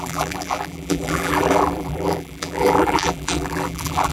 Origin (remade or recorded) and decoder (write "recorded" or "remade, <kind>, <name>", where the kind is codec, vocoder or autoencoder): remade, vocoder, BigVGAN v2